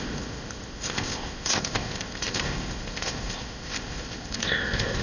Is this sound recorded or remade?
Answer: remade